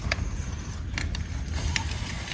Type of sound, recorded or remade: recorded